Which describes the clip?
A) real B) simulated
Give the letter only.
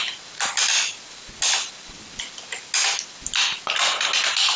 A